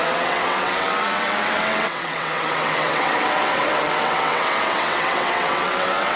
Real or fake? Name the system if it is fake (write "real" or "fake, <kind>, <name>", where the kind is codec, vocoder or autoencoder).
fake, vocoder, WaveNeXt